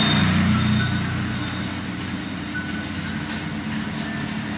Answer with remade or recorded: recorded